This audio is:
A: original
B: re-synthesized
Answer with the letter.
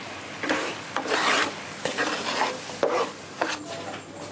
A